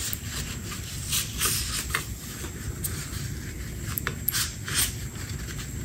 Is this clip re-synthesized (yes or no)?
yes